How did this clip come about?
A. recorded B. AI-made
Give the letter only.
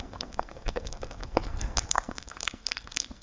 B